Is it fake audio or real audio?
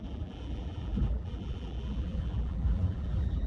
fake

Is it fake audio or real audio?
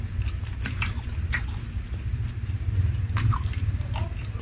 fake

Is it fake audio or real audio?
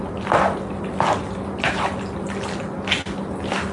real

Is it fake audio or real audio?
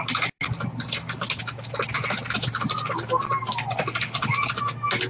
real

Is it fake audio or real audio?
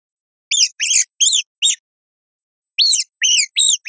real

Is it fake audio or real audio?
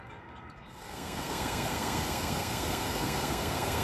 fake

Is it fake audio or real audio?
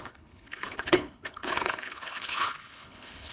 fake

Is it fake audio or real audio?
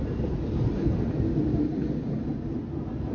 real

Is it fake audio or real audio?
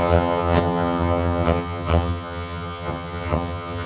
fake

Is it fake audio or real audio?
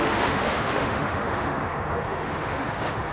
fake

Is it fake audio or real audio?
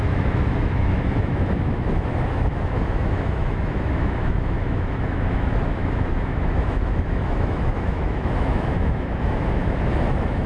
fake